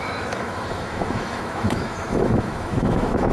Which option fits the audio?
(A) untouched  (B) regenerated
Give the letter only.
B